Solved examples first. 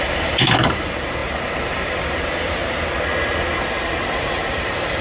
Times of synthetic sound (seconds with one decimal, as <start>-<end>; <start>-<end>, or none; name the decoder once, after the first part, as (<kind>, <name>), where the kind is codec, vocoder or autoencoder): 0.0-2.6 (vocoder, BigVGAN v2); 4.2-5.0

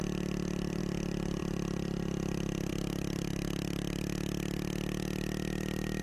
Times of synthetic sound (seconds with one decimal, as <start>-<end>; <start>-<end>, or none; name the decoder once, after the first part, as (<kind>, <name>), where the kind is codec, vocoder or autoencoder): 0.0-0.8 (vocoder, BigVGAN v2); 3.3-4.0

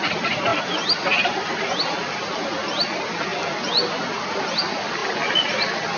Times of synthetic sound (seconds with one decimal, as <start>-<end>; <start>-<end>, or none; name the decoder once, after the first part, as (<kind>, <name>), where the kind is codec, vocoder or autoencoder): none